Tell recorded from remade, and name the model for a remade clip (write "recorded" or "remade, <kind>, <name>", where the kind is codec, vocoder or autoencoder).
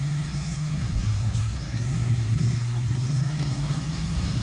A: remade, codec, SNAC